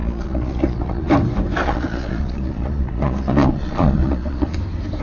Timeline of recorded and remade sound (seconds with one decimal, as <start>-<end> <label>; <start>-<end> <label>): 0.0-1.1 remade; 1.1-1.6 recorded; 1.6-4.6 remade; 4.6-5.0 recorded